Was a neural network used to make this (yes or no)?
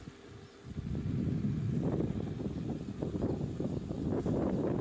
no